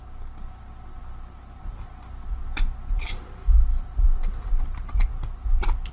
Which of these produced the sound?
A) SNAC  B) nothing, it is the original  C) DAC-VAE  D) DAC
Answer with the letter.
B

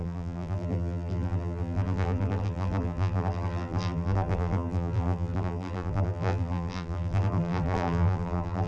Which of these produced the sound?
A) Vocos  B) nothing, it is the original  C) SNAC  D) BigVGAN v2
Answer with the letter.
D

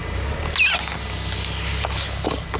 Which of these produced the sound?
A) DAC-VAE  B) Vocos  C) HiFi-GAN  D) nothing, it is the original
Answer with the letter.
D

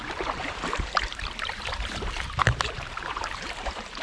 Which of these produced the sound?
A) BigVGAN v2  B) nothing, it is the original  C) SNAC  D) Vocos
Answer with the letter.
A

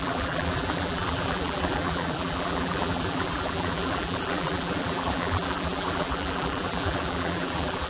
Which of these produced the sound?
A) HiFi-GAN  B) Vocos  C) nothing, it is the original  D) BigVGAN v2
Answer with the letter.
D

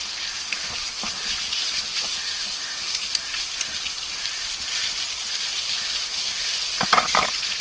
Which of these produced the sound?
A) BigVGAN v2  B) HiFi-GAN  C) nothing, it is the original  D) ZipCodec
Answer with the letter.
C